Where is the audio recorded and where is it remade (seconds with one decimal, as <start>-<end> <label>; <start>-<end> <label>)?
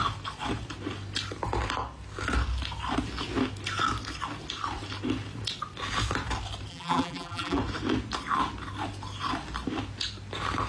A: 0.0-6.7 recorded; 6.7-7.6 remade; 7.6-10.7 recorded